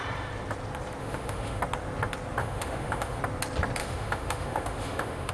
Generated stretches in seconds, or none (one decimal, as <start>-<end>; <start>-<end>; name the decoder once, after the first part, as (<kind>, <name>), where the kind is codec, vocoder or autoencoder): 1.0-1.6 (autoencoder, DAC-VAE); 2.4-3.2; 3.8-5.3